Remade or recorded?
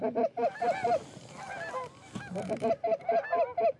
recorded